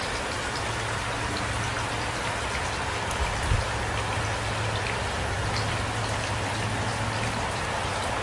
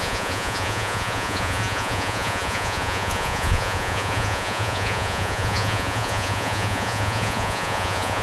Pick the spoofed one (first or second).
second